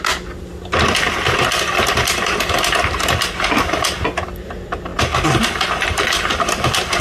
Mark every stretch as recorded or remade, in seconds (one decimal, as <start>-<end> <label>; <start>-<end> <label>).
0.0-7.0 recorded